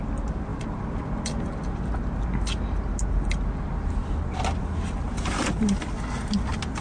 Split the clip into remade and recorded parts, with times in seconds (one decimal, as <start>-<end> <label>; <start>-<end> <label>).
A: 0.0-6.8 recorded